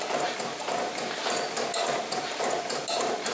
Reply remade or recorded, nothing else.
recorded